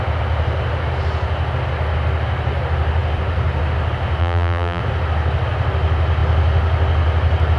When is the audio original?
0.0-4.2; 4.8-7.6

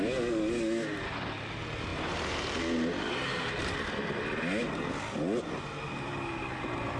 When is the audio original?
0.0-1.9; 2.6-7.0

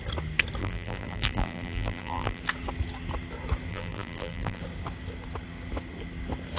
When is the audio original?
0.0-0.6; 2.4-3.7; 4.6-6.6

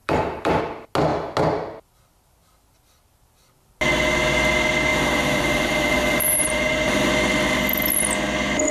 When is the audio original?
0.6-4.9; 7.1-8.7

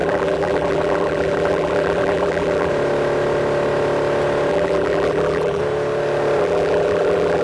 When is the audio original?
2.7-4.5; 5.6-6.4

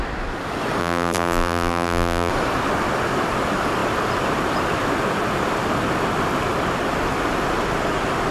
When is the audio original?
0.0-0.8; 2.3-8.3

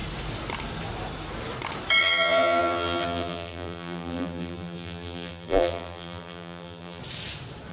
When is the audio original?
0.0-2.0; 7.0-7.7

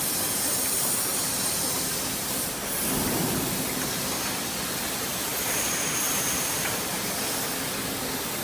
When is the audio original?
0.0-1.1; 2.4-5.3; 6.9-8.4